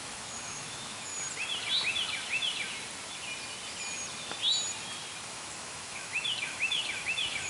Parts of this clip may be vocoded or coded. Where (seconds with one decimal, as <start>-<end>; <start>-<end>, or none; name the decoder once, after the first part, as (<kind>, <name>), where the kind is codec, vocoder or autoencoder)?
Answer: 0.0-1.1 (autoencoder, DAC-VAE); 5.3-7.5